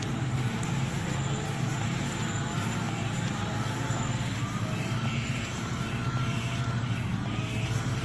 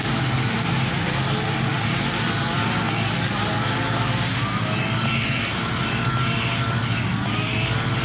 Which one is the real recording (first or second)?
second